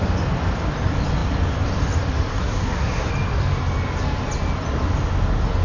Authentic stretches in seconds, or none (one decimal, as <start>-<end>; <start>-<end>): 0.0-2.3; 3.1-5.6